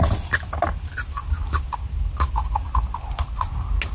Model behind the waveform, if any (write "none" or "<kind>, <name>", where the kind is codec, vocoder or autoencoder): none